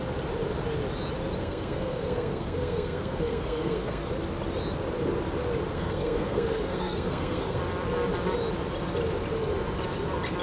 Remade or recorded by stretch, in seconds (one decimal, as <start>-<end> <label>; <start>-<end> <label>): 0.0-1.4 recorded; 1.4-4.1 remade; 4.1-5.7 recorded; 5.7-7.6 remade; 7.6-10.4 recorded